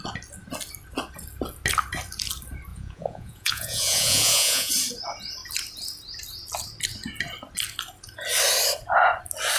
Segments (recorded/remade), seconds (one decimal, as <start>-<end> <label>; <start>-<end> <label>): 0.0-2.7 recorded; 2.7-4.7 remade; 4.7-9.6 recorded